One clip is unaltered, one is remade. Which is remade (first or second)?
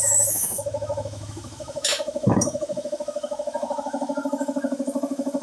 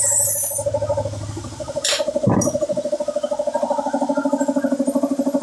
first